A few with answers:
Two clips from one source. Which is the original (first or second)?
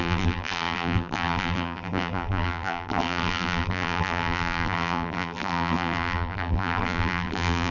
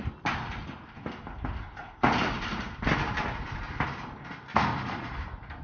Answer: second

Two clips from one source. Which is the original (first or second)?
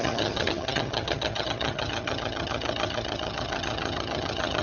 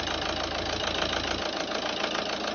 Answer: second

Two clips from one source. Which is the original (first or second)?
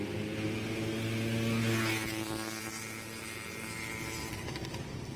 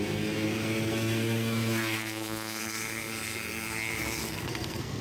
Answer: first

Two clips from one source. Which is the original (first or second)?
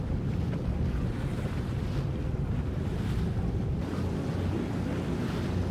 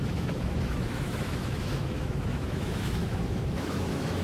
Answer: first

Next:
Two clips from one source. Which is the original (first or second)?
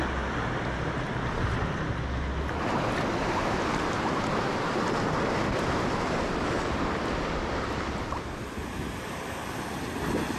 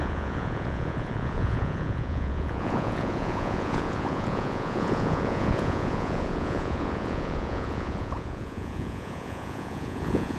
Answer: first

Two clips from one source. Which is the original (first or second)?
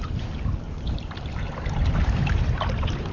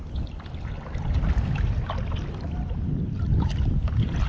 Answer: second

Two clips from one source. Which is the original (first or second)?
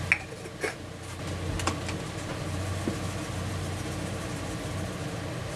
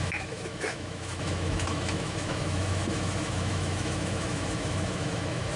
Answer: first